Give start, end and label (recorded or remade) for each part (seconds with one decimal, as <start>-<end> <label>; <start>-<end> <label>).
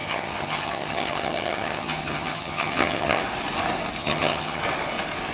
0.0-3.2 remade; 3.2-4.0 recorded; 4.0-4.6 remade; 4.6-5.3 recorded